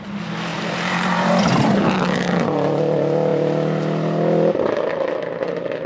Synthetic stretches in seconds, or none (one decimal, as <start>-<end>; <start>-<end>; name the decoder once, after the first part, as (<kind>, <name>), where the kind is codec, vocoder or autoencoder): 0.5-1.3 (vocoder, BigVGAN v2)